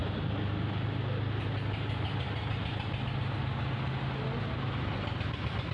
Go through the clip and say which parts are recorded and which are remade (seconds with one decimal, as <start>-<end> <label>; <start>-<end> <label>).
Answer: 0.0-5.7 recorded